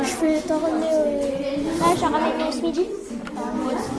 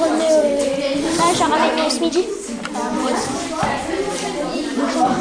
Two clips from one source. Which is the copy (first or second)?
second